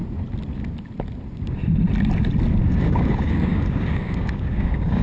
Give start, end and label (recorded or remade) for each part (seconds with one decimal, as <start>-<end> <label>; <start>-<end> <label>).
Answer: 0.0-2.7 recorded; 2.7-5.0 remade